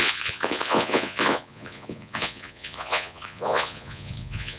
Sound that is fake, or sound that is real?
fake